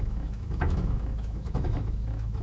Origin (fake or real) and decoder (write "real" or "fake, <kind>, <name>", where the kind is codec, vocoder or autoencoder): fake, autoencoder, DAC-VAE